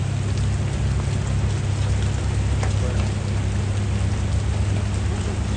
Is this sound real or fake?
real